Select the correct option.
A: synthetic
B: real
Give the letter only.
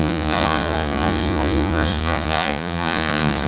A